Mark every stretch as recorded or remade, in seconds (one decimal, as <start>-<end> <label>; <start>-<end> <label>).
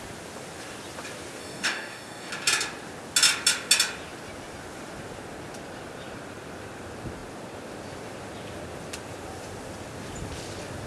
0.0-1.4 recorded; 1.4-2.3 remade; 2.3-10.9 recorded